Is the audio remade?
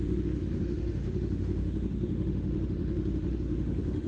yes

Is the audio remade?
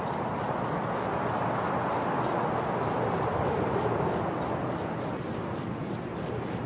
no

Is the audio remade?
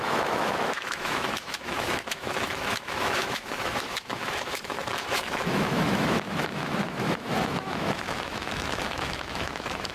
yes